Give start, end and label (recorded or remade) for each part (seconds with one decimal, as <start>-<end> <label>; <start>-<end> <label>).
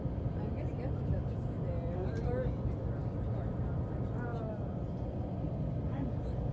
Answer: 0.0-6.5 recorded